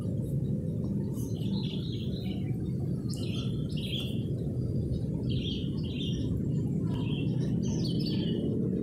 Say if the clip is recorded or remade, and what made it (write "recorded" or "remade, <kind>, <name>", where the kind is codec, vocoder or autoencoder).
recorded